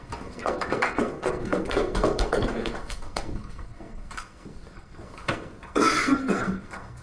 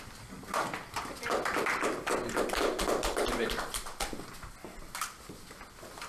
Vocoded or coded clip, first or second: first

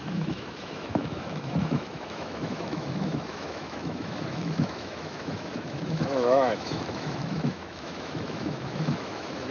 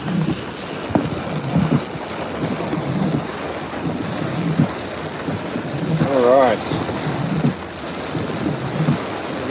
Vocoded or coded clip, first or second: first